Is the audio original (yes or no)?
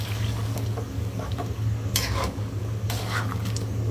no